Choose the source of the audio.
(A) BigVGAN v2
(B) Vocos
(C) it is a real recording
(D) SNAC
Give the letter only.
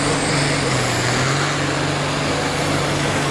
C